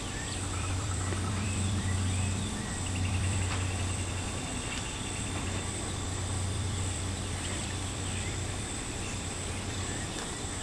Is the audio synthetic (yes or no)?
yes